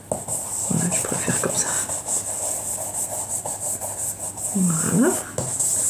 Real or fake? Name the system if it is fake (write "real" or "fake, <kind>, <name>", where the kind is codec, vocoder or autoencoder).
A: real